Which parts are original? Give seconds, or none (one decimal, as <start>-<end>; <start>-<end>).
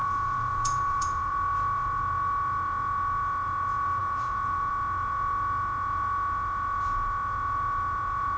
1.3-4.0; 4.7-8.4